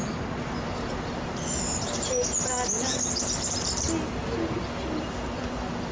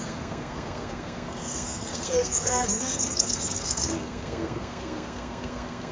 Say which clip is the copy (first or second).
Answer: second